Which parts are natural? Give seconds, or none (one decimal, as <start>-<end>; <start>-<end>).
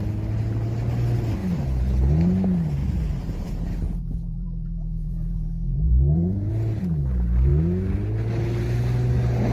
0.0-1.4; 1.9-2.8; 6.5-9.5